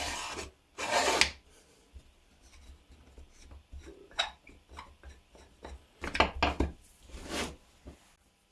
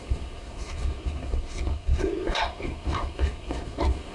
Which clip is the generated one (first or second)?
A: second